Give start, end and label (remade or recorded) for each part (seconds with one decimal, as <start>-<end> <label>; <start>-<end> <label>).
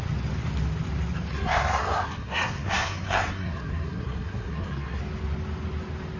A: 0.0-1.3 recorded; 1.3-5.0 remade; 5.0-6.2 recorded